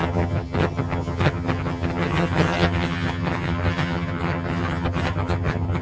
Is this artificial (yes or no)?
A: yes